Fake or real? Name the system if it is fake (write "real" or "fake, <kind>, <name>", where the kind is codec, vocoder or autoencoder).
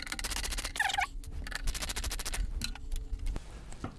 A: real